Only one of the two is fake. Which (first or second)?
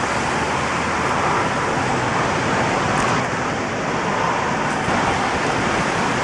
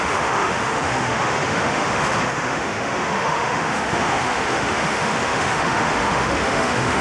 second